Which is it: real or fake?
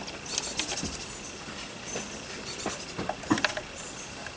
real